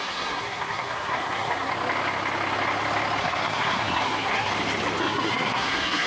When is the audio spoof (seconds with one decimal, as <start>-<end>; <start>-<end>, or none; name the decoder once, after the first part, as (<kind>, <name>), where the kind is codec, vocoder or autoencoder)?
0.0-1.7 (codec, SNAC); 3.2-4.5; 5.0-6.1